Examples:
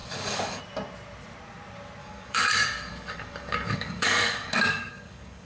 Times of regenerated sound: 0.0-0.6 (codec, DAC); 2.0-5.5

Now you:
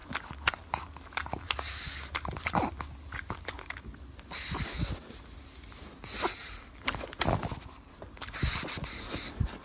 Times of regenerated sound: none

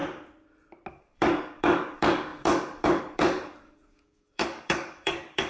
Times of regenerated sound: 0.9-5.5 (codec, DAC)

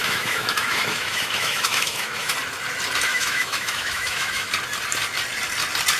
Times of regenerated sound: 0.0-2.3 (autoencoder, DAC-VAE); 3.1-4.5